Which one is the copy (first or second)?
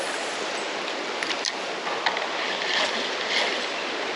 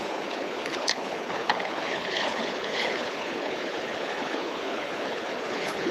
second